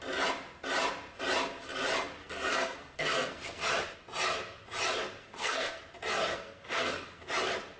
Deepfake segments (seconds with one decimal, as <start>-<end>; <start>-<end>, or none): 2.2-3.7; 5.2-5.8; 6.3-7.3